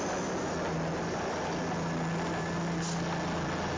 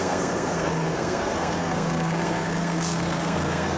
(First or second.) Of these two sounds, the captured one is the first